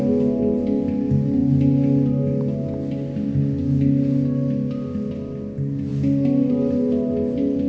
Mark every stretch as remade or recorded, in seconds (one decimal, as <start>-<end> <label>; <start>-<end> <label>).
0.0-7.7 recorded